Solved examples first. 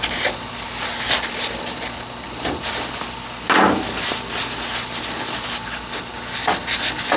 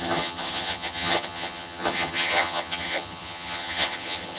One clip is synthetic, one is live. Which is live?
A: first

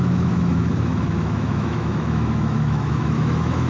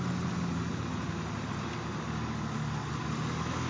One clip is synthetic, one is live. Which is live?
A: second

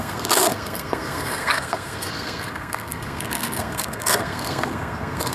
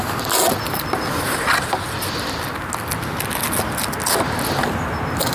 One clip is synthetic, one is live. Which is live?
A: second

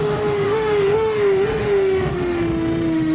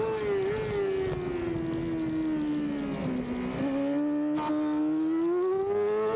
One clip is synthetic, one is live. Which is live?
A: second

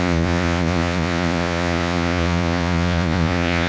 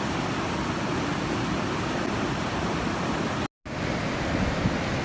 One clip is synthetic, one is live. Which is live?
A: second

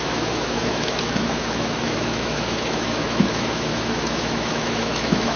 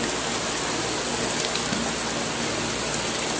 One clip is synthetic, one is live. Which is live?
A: second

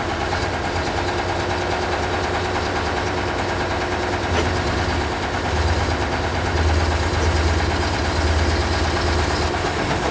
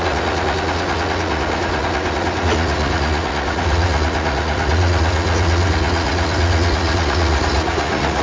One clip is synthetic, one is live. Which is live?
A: first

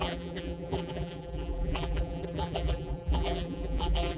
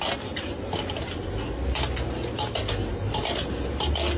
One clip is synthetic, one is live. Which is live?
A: second